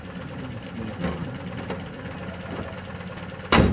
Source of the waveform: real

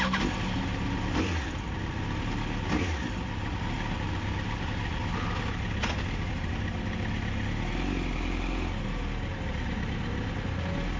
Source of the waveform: real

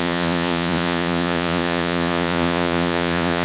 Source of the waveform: fake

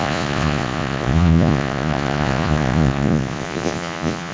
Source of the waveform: fake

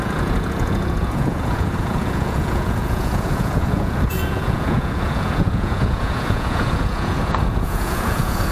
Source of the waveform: fake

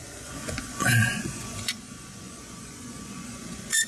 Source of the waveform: fake